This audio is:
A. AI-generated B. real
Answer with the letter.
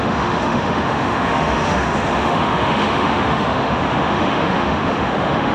A